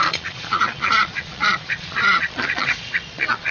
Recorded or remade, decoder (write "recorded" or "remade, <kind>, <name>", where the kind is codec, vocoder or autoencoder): remade, vocoder, Vocos